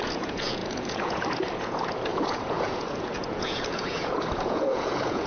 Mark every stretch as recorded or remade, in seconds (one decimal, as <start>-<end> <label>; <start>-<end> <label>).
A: 0.0-5.3 remade

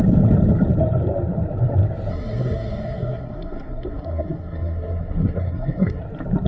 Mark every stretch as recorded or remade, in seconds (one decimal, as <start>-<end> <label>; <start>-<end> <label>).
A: 0.0-2.1 recorded; 2.1-6.0 remade; 6.0-6.5 recorded

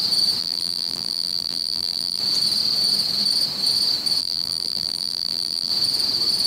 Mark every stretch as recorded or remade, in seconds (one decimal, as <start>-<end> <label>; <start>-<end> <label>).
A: 0.0-0.4 recorded; 0.4-2.2 remade; 2.2-4.2 recorded; 4.2-5.7 remade; 5.7-6.5 recorded